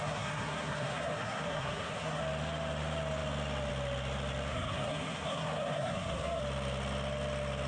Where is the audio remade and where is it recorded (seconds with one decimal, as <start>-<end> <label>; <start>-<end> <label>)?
0.0-2.2 remade; 2.2-4.5 recorded; 4.5-6.4 remade; 6.4-7.7 recorded